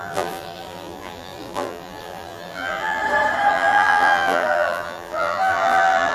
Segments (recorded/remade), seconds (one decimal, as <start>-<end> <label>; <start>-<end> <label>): 0.0-3.0 remade; 3.0-3.5 recorded; 3.5-6.1 remade